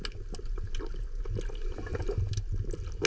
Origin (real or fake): real